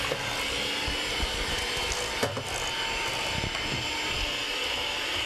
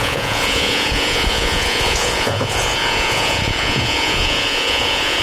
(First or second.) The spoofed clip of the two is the second